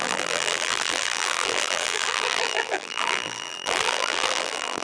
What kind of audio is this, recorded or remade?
remade